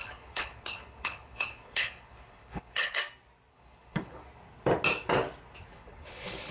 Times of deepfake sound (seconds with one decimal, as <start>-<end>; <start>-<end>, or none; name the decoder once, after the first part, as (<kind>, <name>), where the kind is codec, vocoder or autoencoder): 0.0-3.0 (codec, HILCodec); 3.5-4.2; 5.7-6.5